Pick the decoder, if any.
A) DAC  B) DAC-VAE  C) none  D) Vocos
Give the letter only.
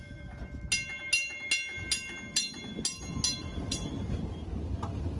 C